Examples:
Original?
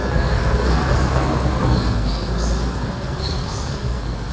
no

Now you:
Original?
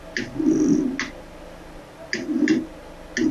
yes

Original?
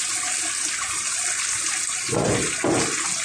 yes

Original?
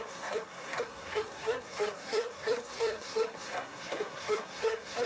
no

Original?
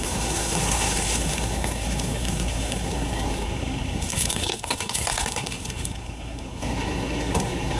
no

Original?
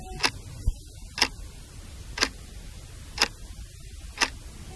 yes